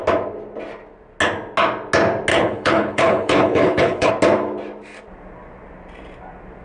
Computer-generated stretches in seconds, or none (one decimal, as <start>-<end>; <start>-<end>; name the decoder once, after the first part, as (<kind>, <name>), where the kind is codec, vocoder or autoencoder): 2.3-4.1 (codec, HILCodec)